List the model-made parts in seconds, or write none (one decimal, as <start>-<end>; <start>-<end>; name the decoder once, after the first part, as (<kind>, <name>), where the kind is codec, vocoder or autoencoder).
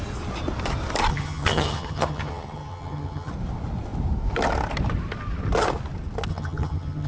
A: 1.1-3.3 (vocoder, HiFi-GAN); 6.3-7.1